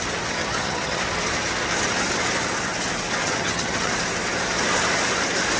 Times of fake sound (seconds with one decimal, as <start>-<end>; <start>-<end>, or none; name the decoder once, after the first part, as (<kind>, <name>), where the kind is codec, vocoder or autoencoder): 0.4-1.0 (vocoder, HiFi-GAN); 3.2-3.9